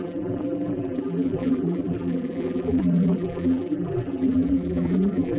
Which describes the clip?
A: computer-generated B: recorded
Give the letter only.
A